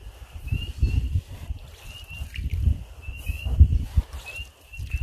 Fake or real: fake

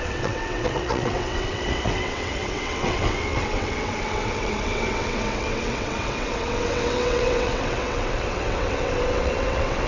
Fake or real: fake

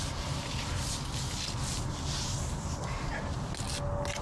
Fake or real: real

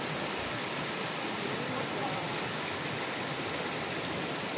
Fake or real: real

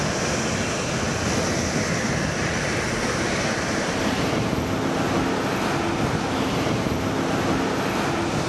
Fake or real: real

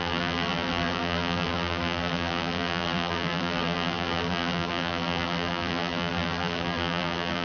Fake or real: fake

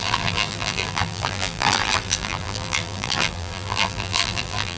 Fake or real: fake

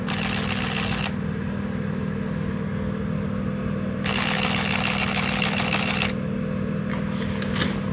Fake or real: real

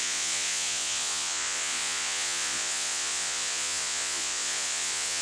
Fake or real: fake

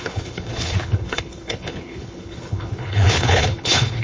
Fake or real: fake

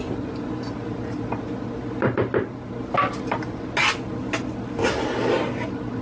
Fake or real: real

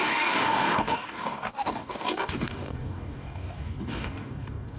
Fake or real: fake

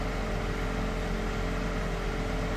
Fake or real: real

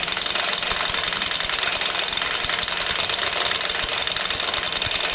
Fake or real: real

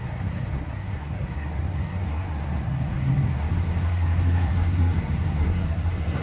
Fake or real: fake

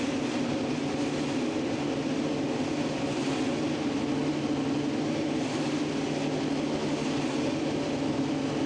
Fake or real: real